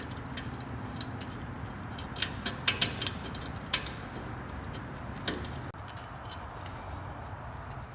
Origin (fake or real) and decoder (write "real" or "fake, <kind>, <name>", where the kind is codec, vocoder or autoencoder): real